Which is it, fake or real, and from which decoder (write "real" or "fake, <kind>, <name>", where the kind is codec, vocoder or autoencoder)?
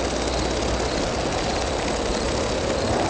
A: real